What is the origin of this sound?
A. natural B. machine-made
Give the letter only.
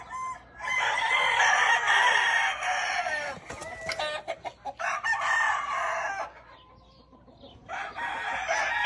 A